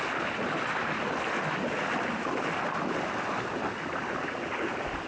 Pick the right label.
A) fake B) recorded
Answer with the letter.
B